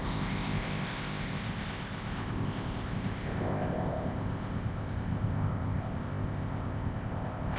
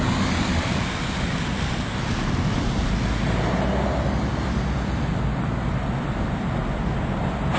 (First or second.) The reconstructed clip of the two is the first